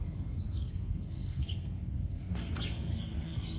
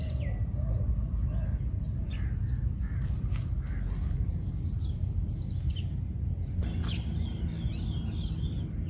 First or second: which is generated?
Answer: first